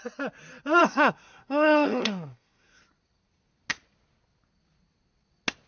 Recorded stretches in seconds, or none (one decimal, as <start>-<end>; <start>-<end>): 0.0-0.8; 2.8-5.7

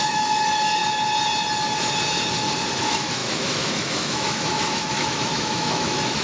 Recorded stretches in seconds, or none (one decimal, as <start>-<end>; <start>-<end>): 0.8-2.8

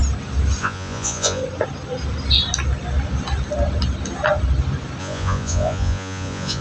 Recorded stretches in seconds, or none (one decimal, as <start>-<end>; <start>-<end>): 0.0-0.6; 1.4-5.0

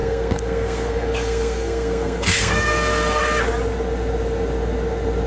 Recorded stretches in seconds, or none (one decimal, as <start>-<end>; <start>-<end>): 3.2-5.3